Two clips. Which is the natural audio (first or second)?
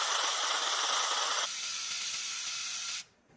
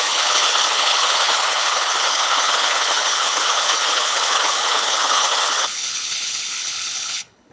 first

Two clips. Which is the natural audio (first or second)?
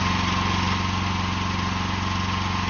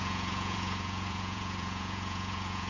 first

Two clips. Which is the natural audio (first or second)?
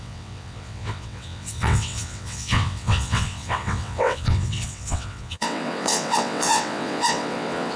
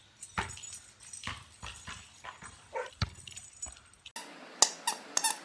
second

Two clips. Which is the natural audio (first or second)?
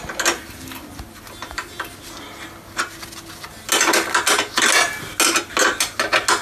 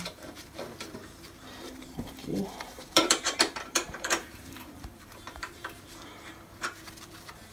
first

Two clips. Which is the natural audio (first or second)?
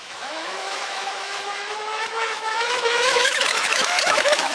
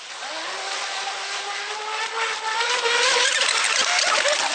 second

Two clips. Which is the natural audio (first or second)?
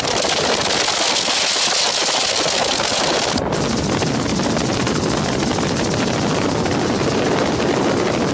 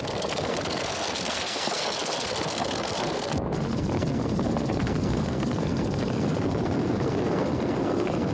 first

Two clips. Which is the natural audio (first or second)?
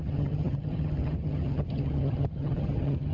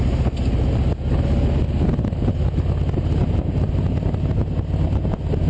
second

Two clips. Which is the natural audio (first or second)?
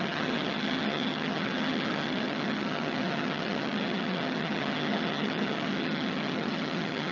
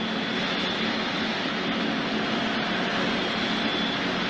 second